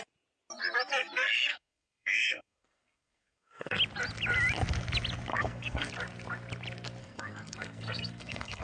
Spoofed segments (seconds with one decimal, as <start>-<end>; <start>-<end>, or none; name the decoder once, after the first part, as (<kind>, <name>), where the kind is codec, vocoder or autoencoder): 1.5-3.8 (codec, SNAC); 5.3-5.9; 7.0-8.6